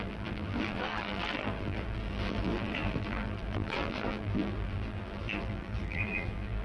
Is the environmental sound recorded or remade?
remade